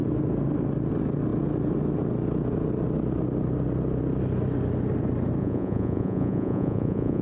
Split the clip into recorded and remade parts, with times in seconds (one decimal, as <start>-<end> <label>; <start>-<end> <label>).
0.0-5.4 recorded; 5.4-7.2 remade